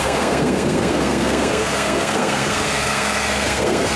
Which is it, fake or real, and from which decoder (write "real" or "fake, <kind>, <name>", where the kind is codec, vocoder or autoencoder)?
fake, codec, SNAC